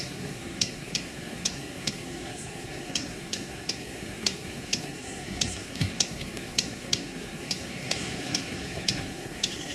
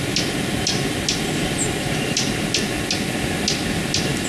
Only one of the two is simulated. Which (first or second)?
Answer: first